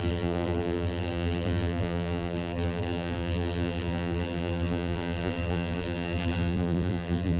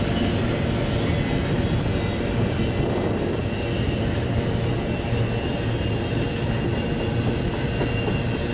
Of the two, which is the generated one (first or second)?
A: first